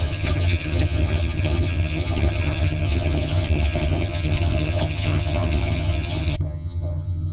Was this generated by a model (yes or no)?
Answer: yes